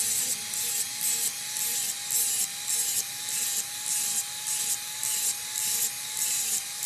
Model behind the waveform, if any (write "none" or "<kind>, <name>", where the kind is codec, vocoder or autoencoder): none